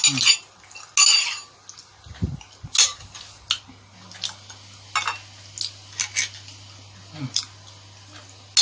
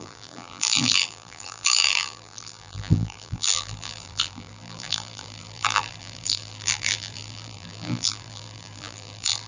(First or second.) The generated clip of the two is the second